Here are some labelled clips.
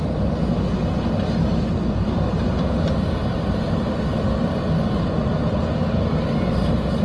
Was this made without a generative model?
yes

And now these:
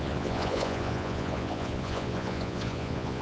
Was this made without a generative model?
no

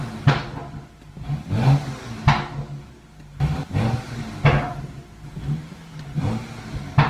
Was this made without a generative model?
yes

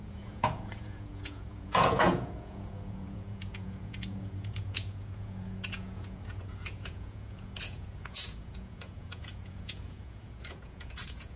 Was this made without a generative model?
no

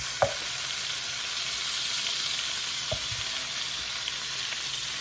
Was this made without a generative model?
yes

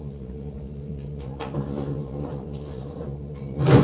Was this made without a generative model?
no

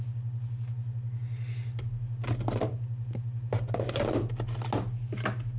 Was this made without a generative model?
yes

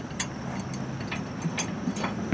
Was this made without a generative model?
yes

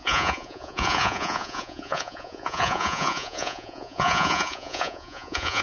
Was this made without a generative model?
no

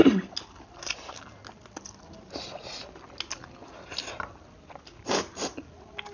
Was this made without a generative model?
yes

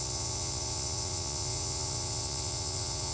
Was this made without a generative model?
no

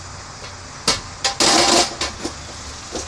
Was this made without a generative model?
yes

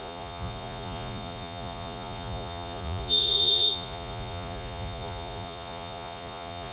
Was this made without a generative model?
no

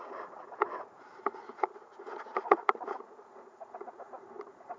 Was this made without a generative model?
no